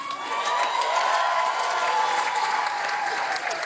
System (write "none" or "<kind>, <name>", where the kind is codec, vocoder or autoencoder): vocoder, Vocos